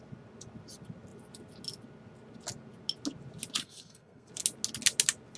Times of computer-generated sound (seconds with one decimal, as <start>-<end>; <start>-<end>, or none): 3.6-4.3